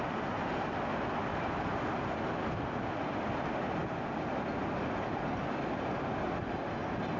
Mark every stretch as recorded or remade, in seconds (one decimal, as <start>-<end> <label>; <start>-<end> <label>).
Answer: 0.0-7.2 recorded